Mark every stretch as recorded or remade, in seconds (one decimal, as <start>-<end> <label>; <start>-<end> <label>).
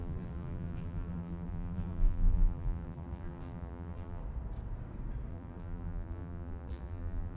0.0-4.2 remade; 4.2-5.3 recorded; 5.3-7.4 remade